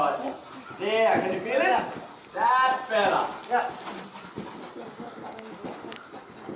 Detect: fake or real real